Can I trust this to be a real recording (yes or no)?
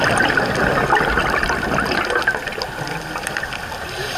yes